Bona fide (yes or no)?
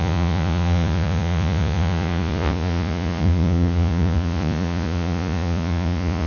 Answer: no